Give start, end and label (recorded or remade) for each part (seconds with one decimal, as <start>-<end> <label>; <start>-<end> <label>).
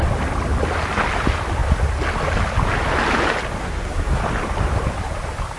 0.0-3.6 recorded; 3.6-4.2 remade; 4.2-5.6 recorded